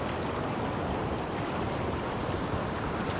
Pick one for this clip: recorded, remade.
recorded